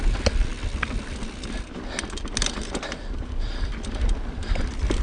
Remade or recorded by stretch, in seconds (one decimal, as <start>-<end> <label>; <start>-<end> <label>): 0.0-5.0 recorded